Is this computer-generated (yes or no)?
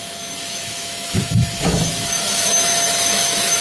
yes